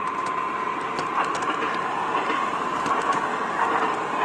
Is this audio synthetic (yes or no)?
yes